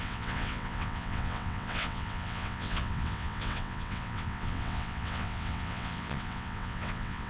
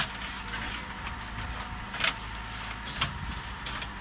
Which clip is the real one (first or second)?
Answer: second